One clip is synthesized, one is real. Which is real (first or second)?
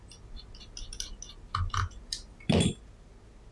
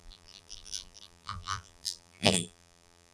first